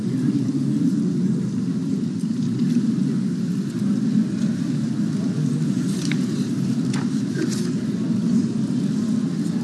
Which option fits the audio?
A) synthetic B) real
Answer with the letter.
B